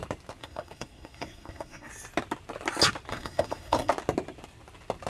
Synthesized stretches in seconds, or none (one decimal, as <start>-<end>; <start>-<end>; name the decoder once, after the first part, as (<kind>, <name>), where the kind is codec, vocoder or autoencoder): 0.4-1.9 (codec, SNAC); 3.1-3.9